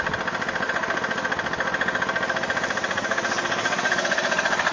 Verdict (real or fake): real